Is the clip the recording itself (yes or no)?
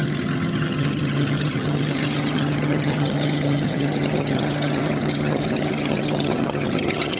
no